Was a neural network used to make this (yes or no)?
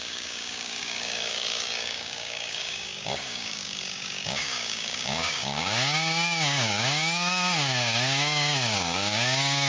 yes